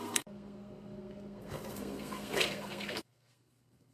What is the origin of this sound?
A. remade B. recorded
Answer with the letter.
A